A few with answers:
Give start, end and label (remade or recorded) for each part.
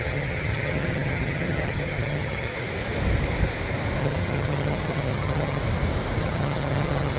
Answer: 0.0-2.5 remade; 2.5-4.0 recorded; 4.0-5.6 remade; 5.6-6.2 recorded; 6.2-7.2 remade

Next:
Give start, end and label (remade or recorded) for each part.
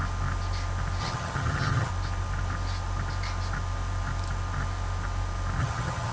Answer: 0.0-1.0 recorded; 1.0-1.9 remade; 1.9-5.6 recorded; 5.6-6.1 remade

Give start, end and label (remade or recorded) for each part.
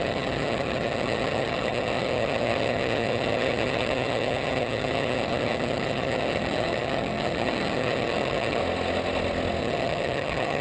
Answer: 0.0-8.6 remade; 8.6-9.6 recorded; 9.6-10.6 remade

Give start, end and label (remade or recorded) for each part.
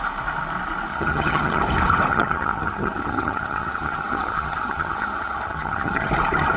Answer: 0.0-0.9 recorded; 0.9-1.6 remade; 1.6-2.1 recorded; 2.1-6.1 remade; 6.1-6.6 recorded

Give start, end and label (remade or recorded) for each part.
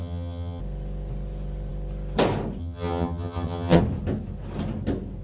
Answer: 0.0-0.6 remade; 0.6-2.6 recorded; 2.6-3.8 remade; 3.8-5.2 recorded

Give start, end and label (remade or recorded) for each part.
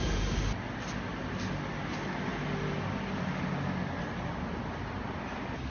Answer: 0.0-5.7 recorded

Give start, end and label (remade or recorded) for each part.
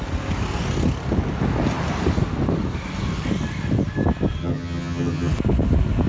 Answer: 0.0-4.4 recorded; 4.4-5.3 remade; 5.3-6.1 recorded